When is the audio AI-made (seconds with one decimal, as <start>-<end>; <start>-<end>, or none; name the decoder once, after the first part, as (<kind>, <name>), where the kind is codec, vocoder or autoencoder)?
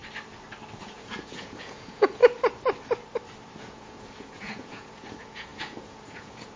0.8-2.2 (vocoder, Vocos); 3.6-6.6